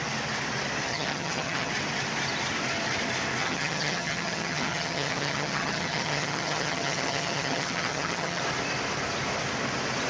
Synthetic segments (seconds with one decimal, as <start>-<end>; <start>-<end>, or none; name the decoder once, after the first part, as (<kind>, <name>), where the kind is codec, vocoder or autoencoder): 0.9-1.7 (vocoder, HiFi-GAN); 3.4-8.4